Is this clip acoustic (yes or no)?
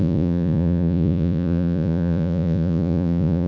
no